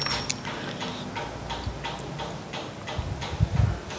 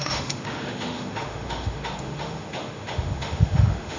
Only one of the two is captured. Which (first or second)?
first